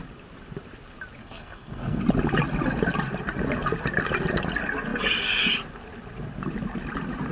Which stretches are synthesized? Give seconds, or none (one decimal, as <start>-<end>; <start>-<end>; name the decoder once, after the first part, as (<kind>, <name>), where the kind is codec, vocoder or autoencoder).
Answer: 1.2-2.0 (codec, SNAC)